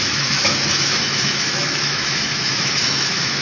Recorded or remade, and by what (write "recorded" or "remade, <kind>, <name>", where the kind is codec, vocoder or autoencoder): remade, autoencoder, DAC-VAE